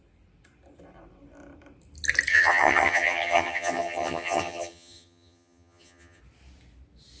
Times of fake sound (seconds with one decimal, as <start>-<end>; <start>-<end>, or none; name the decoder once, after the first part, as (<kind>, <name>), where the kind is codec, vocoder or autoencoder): 2.3-6.2 (vocoder, HiFi-GAN)